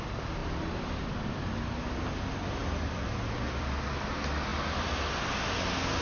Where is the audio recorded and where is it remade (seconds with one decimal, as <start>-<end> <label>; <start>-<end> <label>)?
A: 0.0-6.0 recorded